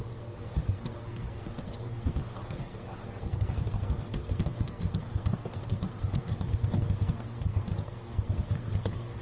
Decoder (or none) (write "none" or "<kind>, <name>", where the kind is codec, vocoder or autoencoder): codec, SNAC